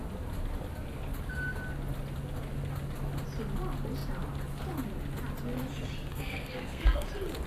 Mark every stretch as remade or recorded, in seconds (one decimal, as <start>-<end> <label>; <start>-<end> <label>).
0.0-6.1 recorded; 6.1-7.1 remade; 7.1-7.5 recorded